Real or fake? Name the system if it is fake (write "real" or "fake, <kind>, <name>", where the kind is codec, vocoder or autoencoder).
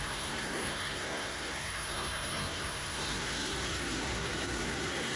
fake, codec, SNAC